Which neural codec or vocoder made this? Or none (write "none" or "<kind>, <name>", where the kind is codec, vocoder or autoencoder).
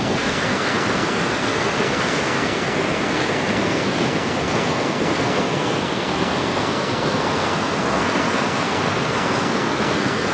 codec, SNAC